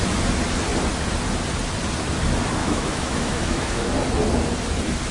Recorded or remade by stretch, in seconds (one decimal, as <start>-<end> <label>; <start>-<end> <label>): 0.0-2.6 recorded; 2.6-3.9 remade; 3.9-5.1 recorded